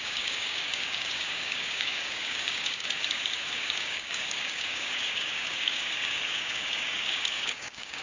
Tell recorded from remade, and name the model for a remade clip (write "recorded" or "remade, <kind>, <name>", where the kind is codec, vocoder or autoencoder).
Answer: remade, codec, DAC